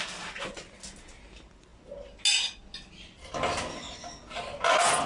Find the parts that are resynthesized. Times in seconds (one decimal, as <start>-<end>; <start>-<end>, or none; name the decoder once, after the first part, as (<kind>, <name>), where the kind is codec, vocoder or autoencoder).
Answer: none